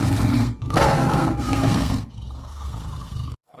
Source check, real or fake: fake